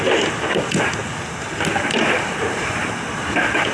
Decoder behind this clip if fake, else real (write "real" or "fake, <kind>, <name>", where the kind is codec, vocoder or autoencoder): real